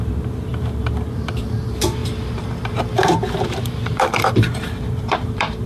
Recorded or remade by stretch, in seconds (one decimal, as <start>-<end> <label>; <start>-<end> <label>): 0.0-5.7 remade